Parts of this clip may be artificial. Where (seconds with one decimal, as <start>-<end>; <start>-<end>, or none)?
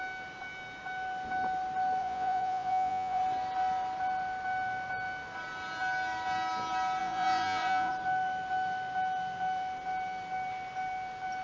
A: 2.0-3.2; 7.0-7.9